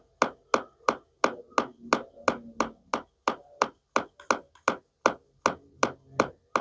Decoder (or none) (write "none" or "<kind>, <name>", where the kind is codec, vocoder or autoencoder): none